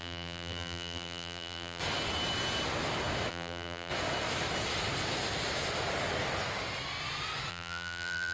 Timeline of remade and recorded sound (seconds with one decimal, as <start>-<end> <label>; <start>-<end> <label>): 0.0-1.8 remade; 1.8-3.3 recorded; 3.3-3.9 remade; 3.9-7.5 recorded; 7.5-8.3 remade